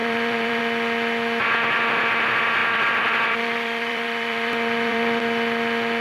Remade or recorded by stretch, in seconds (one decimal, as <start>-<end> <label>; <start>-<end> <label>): 0.0-0.6 remade; 0.6-2.6 recorded; 2.6-5.2 remade; 5.2-6.0 recorded